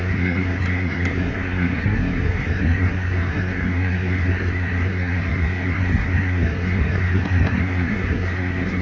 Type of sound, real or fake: fake